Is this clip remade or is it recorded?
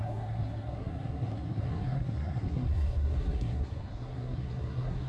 remade